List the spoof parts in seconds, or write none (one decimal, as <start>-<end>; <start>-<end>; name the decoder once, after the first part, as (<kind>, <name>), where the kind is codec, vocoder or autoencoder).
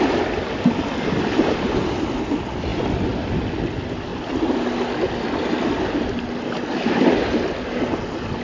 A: none